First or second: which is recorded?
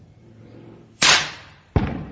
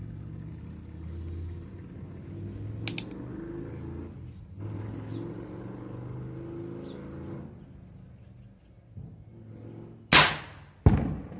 second